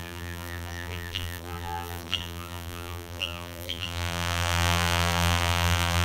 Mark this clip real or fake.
fake